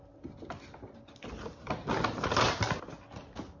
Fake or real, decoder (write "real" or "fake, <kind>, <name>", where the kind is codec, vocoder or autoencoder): real